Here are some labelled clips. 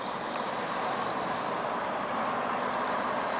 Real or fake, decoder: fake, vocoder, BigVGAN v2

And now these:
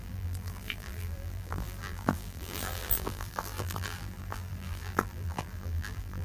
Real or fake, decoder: fake, vocoder, BigVGAN v2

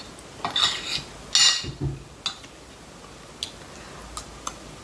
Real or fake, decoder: real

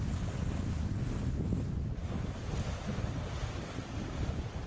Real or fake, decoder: fake, vocoder, BigVGAN v2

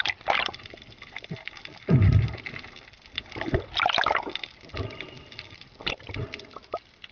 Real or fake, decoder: real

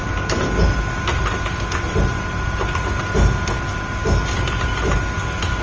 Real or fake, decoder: real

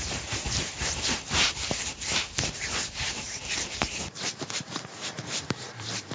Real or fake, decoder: fake, vocoder, BigVGAN v2